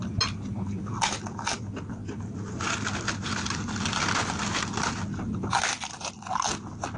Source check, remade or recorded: recorded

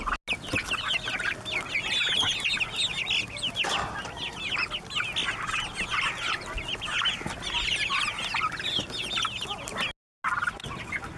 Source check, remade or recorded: recorded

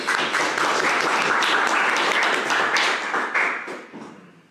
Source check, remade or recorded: recorded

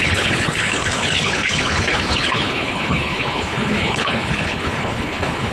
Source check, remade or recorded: remade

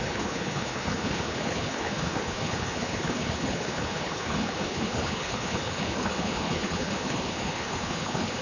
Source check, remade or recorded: remade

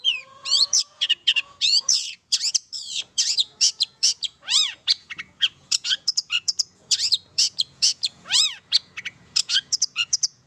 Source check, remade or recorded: remade